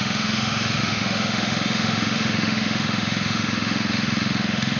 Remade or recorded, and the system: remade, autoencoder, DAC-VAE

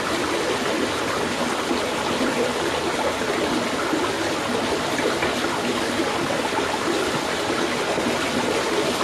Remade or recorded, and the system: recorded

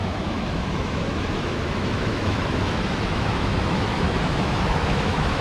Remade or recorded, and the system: remade, autoencoder, DAC-VAE